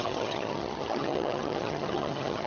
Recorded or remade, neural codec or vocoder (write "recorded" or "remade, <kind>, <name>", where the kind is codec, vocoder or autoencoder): remade, vocoder, HiFi-GAN